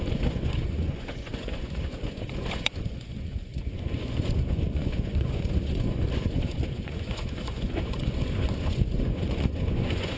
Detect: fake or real fake